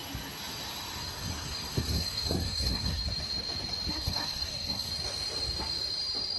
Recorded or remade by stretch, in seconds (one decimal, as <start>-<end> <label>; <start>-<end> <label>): 0.0-1.0 recorded; 1.0-3.0 remade; 3.0-3.9 recorded; 3.9-4.9 remade; 4.9-6.4 recorded